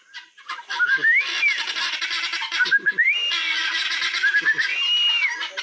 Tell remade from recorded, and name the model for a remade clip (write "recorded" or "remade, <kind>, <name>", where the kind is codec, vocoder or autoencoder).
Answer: recorded